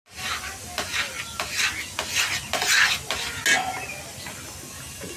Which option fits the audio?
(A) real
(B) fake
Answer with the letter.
A